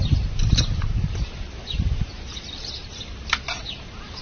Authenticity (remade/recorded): remade